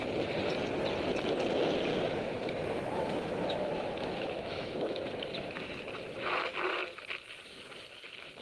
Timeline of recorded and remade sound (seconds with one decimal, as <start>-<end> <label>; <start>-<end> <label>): 0.0-1.9 recorded; 1.9-5.8 remade; 5.8-8.4 recorded